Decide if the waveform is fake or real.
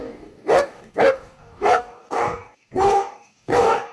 fake